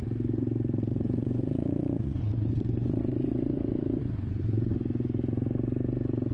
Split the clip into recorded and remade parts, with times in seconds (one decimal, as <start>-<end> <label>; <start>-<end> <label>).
0.0-0.9 recorded; 0.9-4.7 remade; 4.7-6.3 recorded